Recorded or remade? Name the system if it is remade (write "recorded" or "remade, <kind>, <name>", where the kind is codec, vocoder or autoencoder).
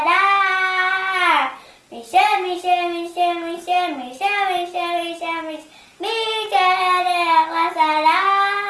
recorded